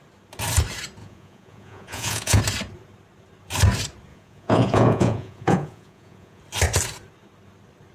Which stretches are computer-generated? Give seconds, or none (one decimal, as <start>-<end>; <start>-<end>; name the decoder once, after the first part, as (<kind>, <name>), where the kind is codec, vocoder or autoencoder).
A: 1.0-2.4 (vocoder, Vocos); 4.1-6.4